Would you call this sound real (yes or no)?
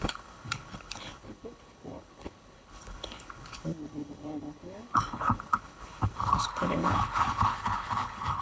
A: no